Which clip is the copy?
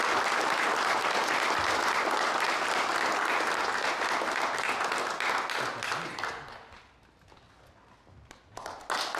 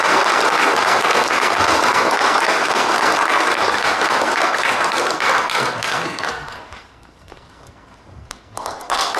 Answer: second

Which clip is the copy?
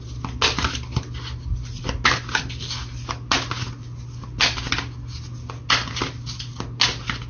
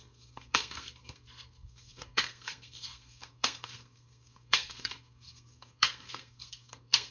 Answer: second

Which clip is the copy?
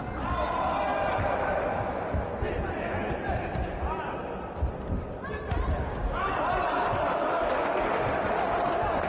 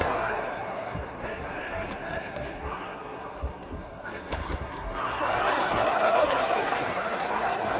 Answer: second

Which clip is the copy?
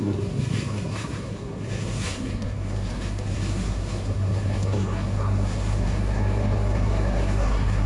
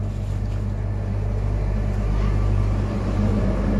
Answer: first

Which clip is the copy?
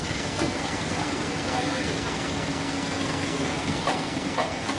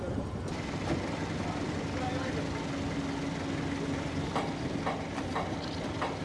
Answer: first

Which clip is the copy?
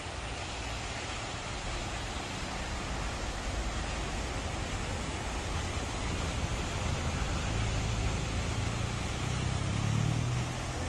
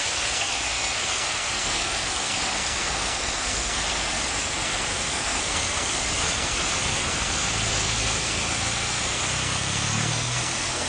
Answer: second